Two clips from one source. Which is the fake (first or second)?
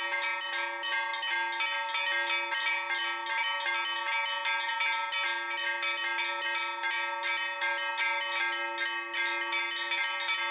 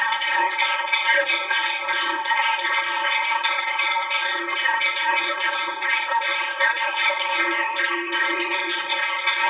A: second